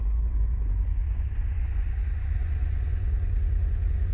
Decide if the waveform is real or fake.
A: fake